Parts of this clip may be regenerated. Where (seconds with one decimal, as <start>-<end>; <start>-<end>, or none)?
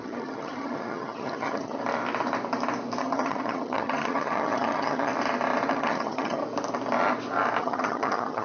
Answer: 0.0-1.8; 3.0-5.1; 5.7-6.4; 7.6-8.4